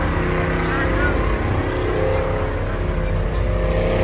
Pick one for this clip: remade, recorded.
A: recorded